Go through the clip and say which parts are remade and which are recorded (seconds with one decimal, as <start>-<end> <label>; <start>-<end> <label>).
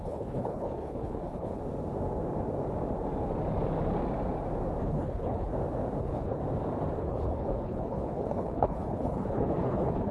0.0-1.6 remade; 1.6-4.8 recorded; 4.8-5.5 remade; 5.5-6.0 recorded; 6.0-6.4 remade; 6.4-7.0 recorded; 7.0-10.1 remade